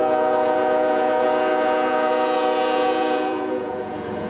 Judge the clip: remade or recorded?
remade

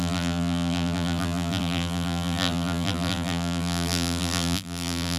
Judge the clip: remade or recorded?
remade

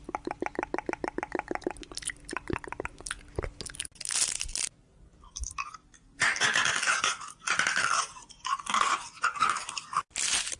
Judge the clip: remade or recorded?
recorded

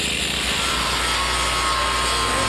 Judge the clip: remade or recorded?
recorded